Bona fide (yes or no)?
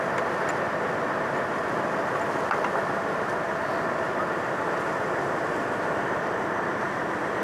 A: yes